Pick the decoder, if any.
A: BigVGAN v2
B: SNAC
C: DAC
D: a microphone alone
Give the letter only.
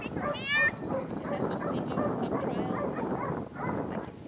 D